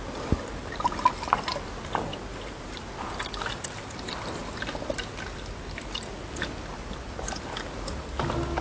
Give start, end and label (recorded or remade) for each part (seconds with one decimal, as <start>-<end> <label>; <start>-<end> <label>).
0.0-2.1 recorded; 2.1-2.9 remade; 2.9-8.6 recorded